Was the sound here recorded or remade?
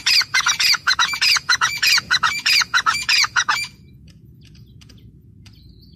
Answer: remade